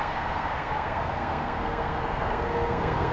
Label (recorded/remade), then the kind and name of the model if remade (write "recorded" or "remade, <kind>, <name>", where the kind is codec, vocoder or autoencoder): remade, codec, SNAC